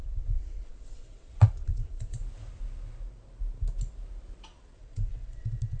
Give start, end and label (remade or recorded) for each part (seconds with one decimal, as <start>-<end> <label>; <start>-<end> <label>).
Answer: 0.0-2.2 remade; 2.2-4.8 recorded; 4.8-5.8 remade